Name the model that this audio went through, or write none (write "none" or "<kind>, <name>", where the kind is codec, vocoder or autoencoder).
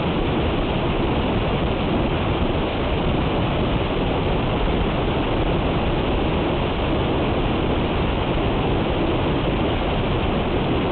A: none